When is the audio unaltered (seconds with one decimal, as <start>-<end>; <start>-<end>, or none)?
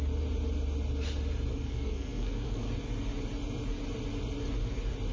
0.0-1.5; 2.7-5.1